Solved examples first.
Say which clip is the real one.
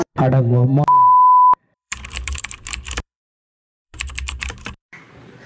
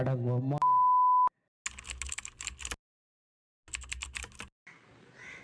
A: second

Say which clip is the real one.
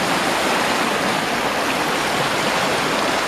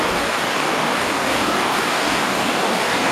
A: first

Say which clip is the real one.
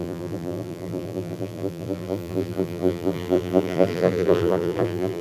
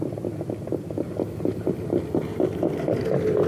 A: second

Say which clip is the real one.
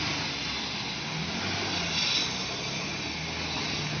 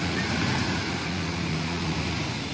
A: first